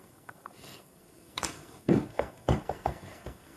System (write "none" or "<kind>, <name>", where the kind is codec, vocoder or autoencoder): codec, SNAC